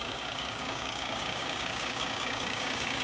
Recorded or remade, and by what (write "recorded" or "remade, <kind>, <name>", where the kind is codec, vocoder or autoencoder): remade, codec, DAC